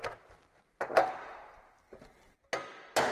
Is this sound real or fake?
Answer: real